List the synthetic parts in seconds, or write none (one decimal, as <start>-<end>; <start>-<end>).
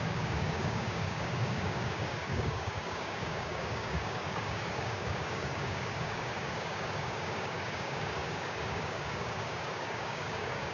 0.0-10.7